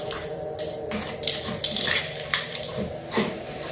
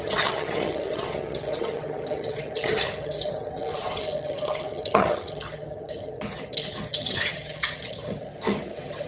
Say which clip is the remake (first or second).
second